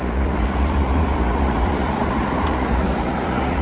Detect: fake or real fake